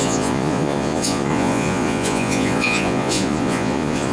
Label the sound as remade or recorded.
remade